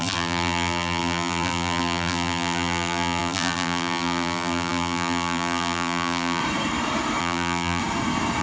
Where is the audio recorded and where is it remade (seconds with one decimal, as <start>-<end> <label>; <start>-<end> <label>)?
0.0-6.4 remade; 6.4-7.2 recorded; 7.2-7.8 remade; 7.8-8.4 recorded